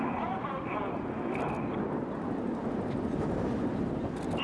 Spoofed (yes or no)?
no